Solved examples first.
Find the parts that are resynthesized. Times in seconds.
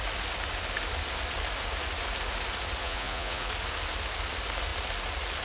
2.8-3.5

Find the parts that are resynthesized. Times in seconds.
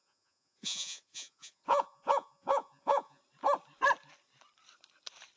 0.0-3.2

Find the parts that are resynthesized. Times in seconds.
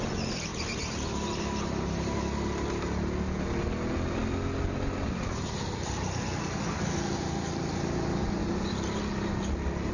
none